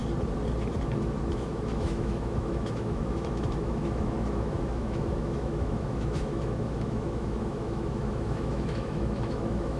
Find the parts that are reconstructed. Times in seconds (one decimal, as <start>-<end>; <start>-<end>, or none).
1.3-9.8